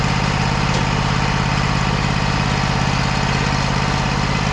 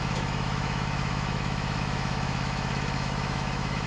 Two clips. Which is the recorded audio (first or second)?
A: first